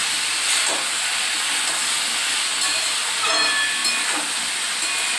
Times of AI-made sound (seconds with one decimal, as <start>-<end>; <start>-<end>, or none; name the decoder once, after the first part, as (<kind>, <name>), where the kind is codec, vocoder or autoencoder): none